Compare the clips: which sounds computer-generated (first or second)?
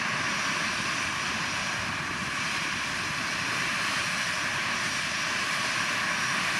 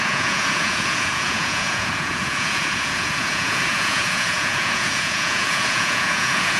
second